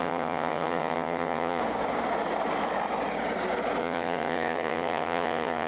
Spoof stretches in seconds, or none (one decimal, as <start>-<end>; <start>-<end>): 0.0-1.6; 3.8-5.7